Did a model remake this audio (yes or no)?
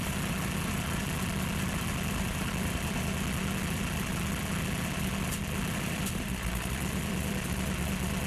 yes